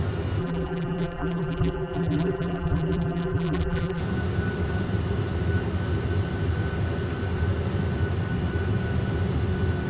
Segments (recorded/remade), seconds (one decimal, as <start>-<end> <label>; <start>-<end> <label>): 0.0-0.4 recorded; 0.4-4.0 remade; 4.0-9.9 recorded